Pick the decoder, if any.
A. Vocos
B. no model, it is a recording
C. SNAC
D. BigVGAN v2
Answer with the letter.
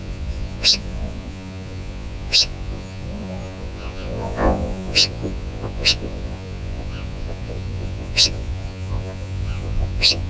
A